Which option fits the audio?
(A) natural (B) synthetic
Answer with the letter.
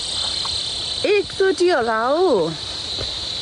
A